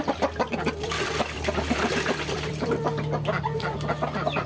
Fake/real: fake